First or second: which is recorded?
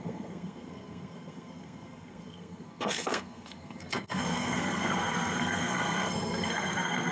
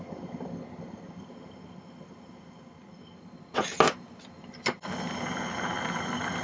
second